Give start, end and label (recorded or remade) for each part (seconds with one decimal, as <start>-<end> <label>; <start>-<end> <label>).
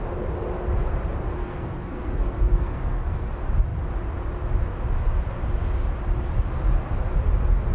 0.0-1.4 recorded; 1.4-3.3 remade; 3.3-7.7 recorded